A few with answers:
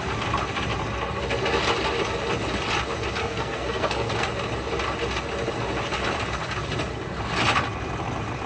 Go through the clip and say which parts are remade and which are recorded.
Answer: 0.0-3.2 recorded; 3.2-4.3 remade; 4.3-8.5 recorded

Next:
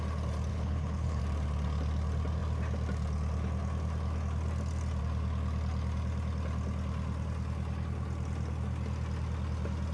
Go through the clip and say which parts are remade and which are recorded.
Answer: 0.0-0.5 recorded; 0.5-1.2 remade; 1.2-9.9 recorded

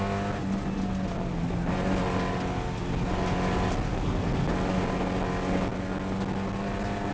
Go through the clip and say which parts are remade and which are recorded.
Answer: 0.0-7.1 recorded

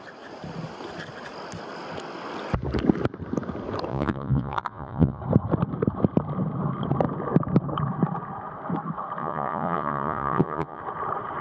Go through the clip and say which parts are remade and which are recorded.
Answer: 0.0-3.9 recorded; 3.9-5.2 remade; 5.2-9.2 recorded; 9.2-10.8 remade; 10.8-11.4 recorded

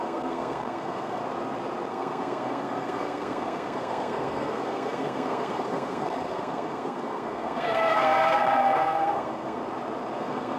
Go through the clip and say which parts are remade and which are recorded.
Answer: 0.0-1.2 remade; 1.2-1.9 recorded; 1.9-9.6 remade; 9.6-10.2 recorded; 10.2-10.6 remade

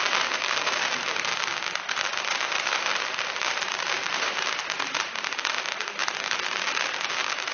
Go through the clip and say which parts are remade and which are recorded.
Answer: 0.0-1.3 remade; 1.3-1.9 recorded; 1.9-7.5 remade